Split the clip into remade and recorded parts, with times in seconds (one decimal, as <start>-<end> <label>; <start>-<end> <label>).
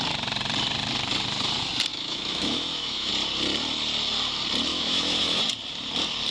0.0-1.9 recorded; 1.9-3.1 remade; 3.1-4.7 recorded; 4.7-5.4 remade; 5.4-6.3 recorded